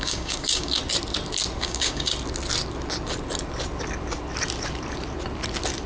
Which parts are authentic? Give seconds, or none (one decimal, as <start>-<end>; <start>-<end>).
0.8-1.6; 2.1-5.9